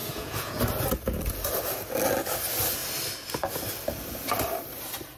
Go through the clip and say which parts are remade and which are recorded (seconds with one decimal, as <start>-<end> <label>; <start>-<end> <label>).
0.0-0.6 remade; 0.6-5.2 recorded